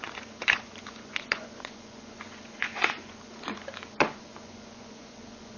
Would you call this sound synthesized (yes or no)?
yes